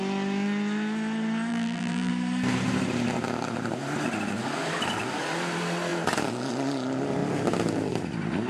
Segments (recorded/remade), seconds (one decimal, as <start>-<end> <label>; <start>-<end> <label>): 0.0-1.5 recorded; 1.5-2.1 remade; 2.1-8.5 recorded